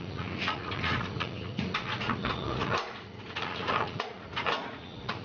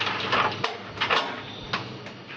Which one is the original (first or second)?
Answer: second